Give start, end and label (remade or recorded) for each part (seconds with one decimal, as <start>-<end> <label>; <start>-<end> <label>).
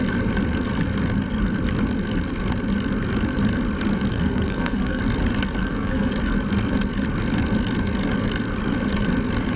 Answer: 0.0-4.1 recorded; 4.1-5.0 remade; 5.0-5.6 recorded; 5.6-6.1 remade; 6.1-9.6 recorded